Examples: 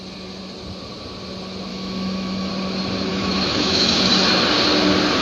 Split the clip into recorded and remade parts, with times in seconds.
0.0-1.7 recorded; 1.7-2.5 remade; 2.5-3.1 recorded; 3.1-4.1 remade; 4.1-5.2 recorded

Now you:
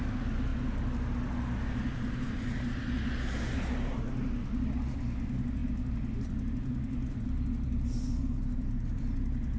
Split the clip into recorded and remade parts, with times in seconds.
0.0-9.6 recorded

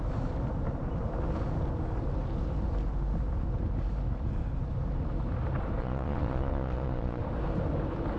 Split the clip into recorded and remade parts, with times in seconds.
0.0-5.8 recorded; 5.8-7.2 remade; 7.2-8.2 recorded

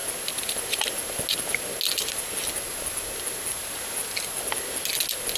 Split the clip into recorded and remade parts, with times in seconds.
0.0-5.4 recorded

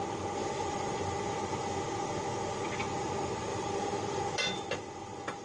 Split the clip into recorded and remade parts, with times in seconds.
0.0-0.4 recorded; 0.4-1.1 remade; 1.1-3.5 recorded; 3.5-4.2 remade; 4.2-5.4 recorded